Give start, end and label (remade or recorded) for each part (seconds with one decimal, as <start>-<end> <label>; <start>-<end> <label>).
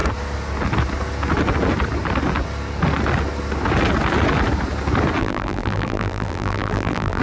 0.0-5.2 recorded; 5.2-7.2 remade